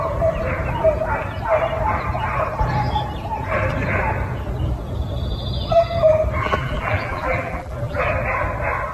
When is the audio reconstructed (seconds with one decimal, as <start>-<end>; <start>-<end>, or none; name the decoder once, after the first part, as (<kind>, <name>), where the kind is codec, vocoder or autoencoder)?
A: 6.4-8.0 (vocoder, BigVGAN v2)